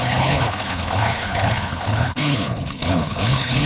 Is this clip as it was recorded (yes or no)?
no